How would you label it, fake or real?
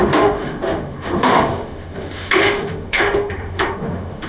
fake